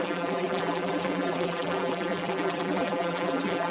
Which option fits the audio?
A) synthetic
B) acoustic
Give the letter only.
A